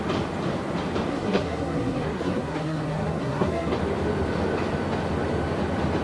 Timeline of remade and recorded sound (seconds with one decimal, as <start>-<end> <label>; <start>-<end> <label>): 0.0-1.1 recorded; 1.1-3.7 remade; 3.7-6.0 recorded